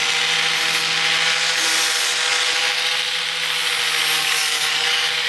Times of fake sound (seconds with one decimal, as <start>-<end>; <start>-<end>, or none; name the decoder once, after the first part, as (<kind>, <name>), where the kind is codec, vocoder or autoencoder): 4.2-5.3 (codec, DAC)